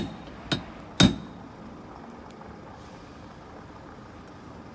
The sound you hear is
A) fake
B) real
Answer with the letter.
B